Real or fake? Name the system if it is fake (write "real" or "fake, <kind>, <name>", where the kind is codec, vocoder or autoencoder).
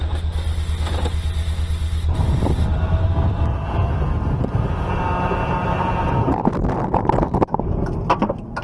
real